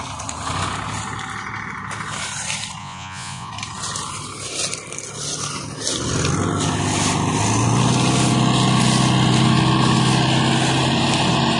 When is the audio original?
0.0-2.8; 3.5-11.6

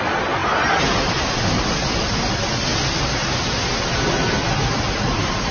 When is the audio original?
0.0-5.5

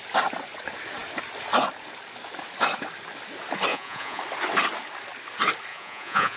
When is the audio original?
0.0-3.7; 4.2-5.7

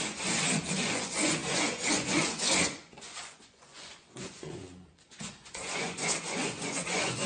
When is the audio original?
none

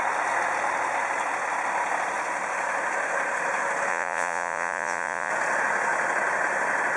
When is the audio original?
0.0-3.9; 5.3-7.0